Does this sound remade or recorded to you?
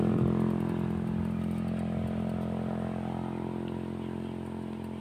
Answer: recorded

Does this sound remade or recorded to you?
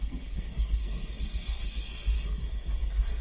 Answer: remade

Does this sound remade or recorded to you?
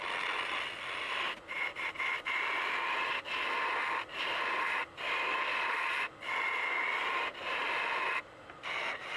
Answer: recorded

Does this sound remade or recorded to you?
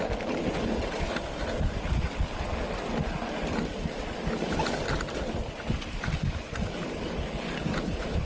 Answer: recorded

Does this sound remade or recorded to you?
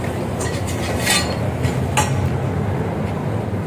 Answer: recorded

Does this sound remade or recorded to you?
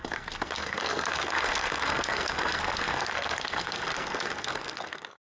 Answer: remade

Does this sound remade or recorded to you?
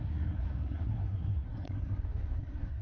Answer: remade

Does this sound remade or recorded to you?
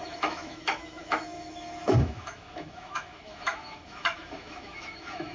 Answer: remade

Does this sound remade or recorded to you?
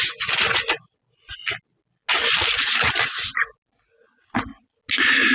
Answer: recorded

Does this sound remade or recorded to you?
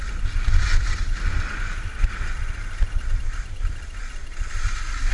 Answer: recorded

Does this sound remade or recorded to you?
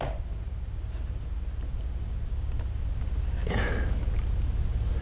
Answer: recorded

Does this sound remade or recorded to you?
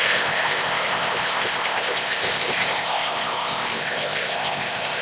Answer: remade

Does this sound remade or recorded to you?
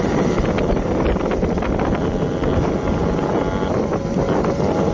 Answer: recorded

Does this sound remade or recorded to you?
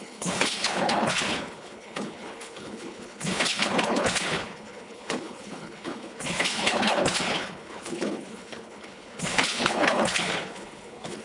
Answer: remade